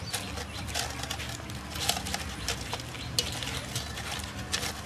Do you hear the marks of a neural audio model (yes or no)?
no